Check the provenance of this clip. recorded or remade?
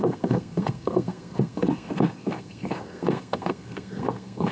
remade